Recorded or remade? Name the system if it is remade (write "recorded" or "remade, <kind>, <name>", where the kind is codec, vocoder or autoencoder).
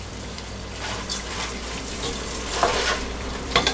remade, vocoder, BigVGAN v2